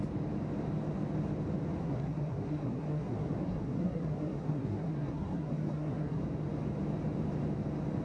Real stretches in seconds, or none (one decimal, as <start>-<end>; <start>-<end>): 0.0-1.8; 6.2-8.0